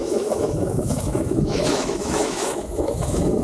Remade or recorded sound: remade